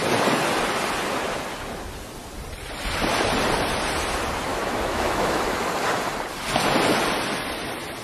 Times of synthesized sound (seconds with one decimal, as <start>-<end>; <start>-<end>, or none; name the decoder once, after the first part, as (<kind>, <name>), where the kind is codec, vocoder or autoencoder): 4.5-5.4 (autoencoder, DAC-VAE)